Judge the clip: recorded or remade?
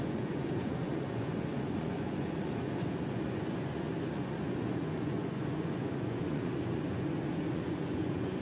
remade